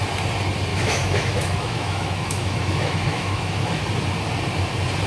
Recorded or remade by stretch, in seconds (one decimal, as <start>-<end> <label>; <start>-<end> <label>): 0.0-0.7 recorded; 0.7-3.8 remade; 3.8-5.1 recorded